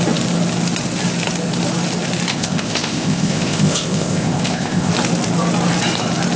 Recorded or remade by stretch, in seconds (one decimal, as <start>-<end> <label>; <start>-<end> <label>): 0.0-2.3 recorded; 2.3-4.9 remade; 4.9-6.4 recorded